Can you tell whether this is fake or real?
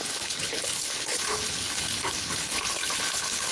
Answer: fake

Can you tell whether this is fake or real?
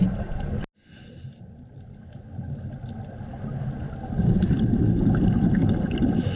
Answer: real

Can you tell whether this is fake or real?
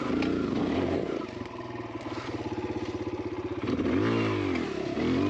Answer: real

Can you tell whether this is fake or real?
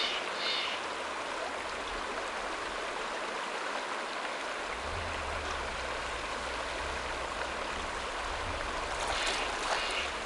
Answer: real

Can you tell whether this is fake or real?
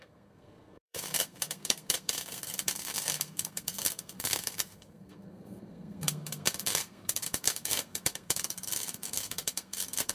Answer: fake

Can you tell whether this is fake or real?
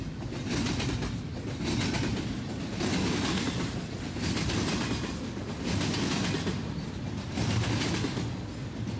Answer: real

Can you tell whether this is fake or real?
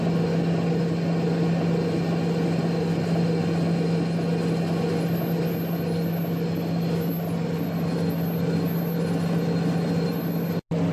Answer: real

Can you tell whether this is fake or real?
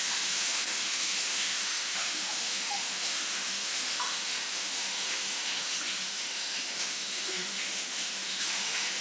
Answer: fake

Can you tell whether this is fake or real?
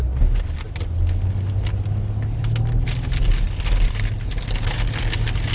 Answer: real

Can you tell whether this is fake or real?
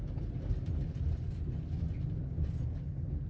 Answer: real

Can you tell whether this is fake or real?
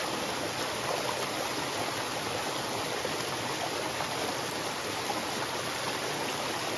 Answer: real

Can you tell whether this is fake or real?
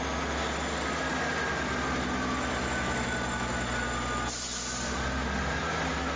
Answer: real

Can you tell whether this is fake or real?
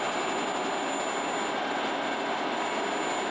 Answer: real